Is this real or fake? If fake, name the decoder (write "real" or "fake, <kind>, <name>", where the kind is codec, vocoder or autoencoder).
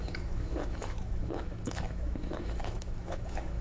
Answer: fake, autoencoder, DAC-VAE